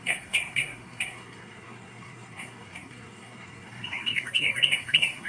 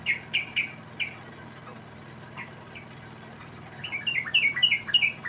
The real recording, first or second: second